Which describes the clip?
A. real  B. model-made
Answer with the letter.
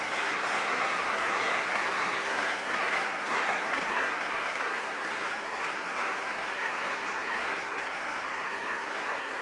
B